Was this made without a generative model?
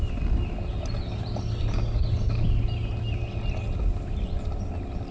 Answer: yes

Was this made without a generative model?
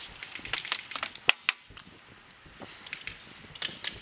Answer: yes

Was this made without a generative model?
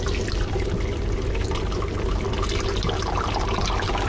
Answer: yes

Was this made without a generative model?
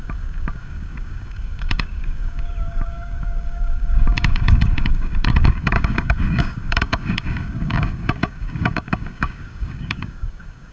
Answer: no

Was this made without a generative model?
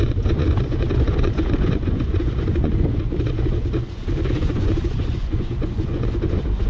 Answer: no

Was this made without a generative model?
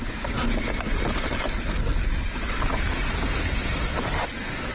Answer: yes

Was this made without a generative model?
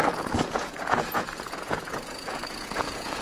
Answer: no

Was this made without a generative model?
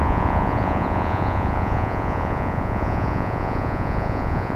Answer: no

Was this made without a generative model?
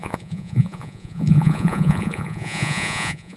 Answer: no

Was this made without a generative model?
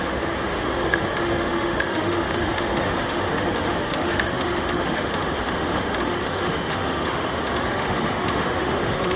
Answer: no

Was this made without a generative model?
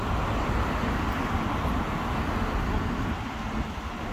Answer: yes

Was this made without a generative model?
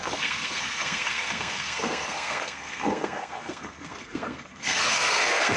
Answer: no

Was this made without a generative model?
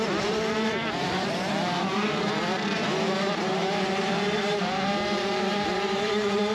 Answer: no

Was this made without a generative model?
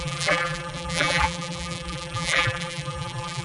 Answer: no